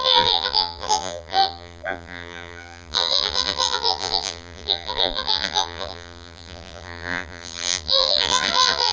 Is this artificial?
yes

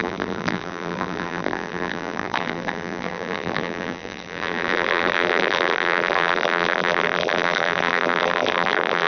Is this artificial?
yes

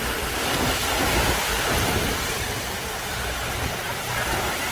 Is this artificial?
yes